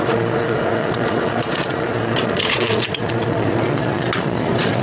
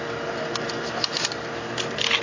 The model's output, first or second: first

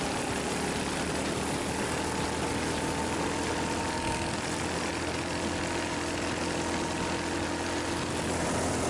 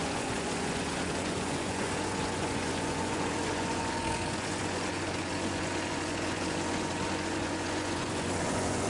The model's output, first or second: second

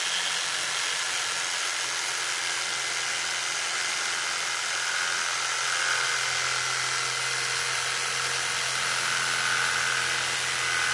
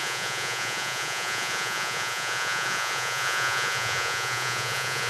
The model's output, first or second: second